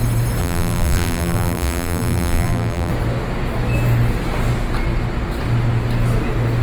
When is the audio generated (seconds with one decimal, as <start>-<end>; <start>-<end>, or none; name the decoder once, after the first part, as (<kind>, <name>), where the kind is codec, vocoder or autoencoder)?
0.4-2.9 (vocoder, BigVGAN v2)